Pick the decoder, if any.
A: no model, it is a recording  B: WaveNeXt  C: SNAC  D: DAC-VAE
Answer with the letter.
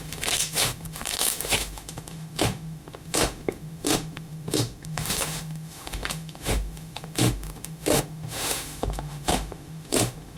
D